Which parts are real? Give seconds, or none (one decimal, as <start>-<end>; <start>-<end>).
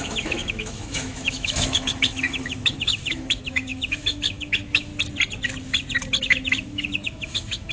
4.9-6.2